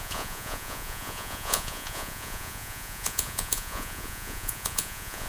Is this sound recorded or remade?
remade